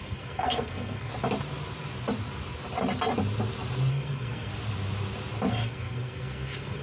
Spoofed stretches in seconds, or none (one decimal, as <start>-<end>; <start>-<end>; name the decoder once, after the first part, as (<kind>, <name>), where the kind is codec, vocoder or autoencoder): 0.0-1.1 (codec, SNAC); 3.9-4.5; 5.5-6.8